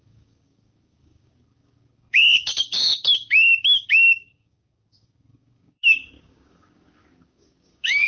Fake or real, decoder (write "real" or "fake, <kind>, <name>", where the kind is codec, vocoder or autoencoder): fake, codec, DAC